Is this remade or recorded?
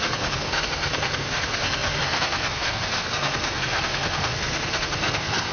remade